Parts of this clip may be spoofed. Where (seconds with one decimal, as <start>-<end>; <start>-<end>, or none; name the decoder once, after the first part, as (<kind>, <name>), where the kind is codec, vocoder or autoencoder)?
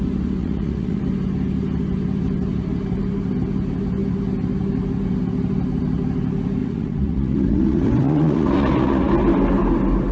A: 0.4-1.0 (vocoder, Vocos); 6.6-9.1